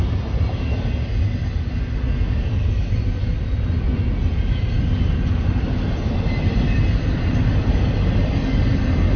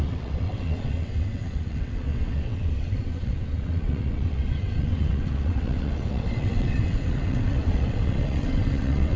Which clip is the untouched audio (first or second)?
first